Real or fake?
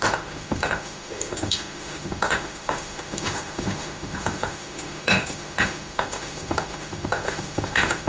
fake